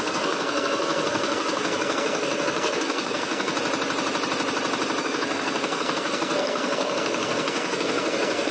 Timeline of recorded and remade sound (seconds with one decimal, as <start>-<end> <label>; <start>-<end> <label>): 0.0-3.5 remade; 3.5-5.0 recorded; 5.0-8.5 remade